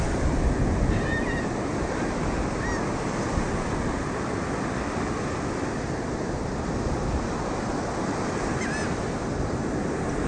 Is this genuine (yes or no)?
yes